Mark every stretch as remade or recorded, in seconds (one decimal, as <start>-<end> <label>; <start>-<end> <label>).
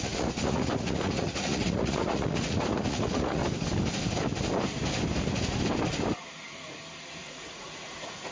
0.0-3.4 remade; 3.4-7.3 recorded; 7.3-8.3 remade